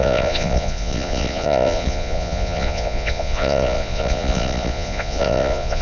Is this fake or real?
fake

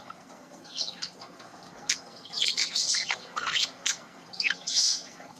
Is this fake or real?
fake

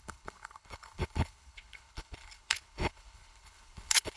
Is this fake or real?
fake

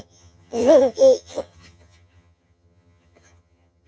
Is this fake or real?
fake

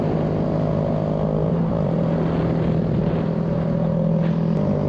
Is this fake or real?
real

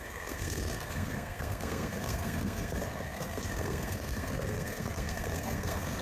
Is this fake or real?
fake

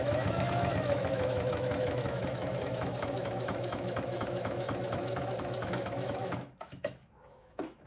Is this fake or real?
fake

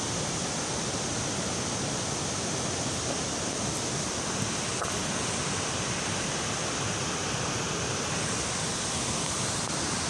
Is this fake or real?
real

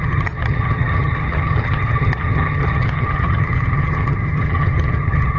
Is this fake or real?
fake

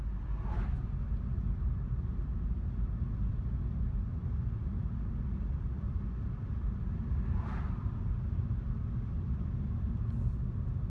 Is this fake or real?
real